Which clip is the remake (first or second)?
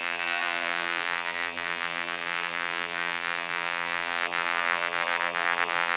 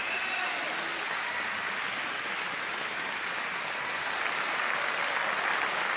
first